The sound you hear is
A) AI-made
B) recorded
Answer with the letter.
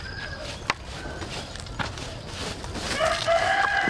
B